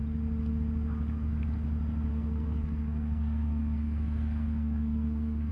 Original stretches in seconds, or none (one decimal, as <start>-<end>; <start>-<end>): 0.0-2.1